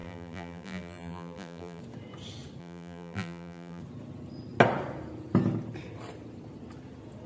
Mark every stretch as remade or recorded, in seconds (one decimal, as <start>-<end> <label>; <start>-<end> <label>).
0.0-1.8 remade; 1.8-2.6 recorded; 2.6-3.8 remade; 3.8-7.3 recorded